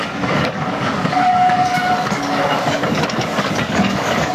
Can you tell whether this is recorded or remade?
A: remade